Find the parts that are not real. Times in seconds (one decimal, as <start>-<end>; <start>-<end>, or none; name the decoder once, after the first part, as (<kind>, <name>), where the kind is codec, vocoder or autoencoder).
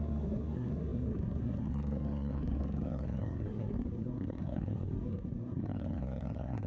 0.0-6.7 (codec, SNAC)